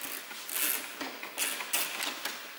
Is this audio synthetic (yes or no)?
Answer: no